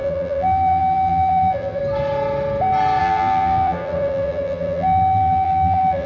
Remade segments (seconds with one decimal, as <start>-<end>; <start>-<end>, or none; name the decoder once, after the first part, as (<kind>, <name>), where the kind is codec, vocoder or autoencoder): 0.0-1.8 (vocoder, BigVGAN v2); 3.0-6.1